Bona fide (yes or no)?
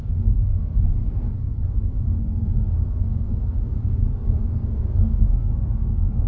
no